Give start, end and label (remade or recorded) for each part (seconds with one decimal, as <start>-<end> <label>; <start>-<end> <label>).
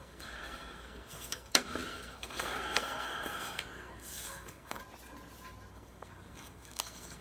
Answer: 0.0-4.8 remade; 4.8-5.7 recorded; 5.7-7.2 remade